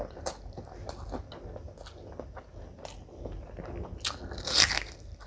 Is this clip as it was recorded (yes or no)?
yes